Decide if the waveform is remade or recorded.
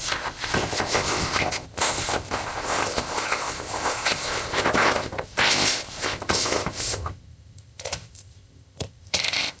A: remade